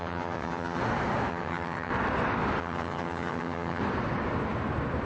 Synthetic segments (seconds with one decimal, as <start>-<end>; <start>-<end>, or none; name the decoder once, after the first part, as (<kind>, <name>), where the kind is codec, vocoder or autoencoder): 0.0-0.8 (vocoder, HiFi-GAN); 1.3-1.9; 2.6-3.8